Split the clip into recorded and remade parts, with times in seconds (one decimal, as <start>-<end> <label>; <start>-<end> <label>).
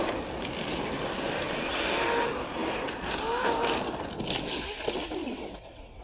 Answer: 0.0-5.2 recorded; 5.2-6.0 remade